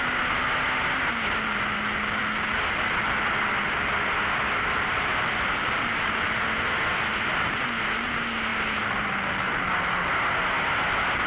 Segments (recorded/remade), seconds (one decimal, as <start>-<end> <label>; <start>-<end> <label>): 0.0-5.6 recorded; 5.6-6.3 remade; 6.3-11.3 recorded